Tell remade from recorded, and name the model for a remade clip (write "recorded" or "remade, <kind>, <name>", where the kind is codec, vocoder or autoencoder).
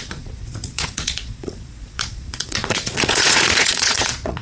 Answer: remade, vocoder, Vocos